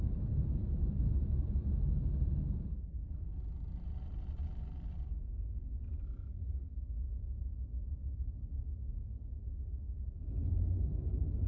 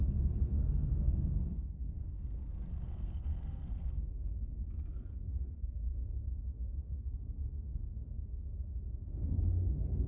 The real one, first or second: first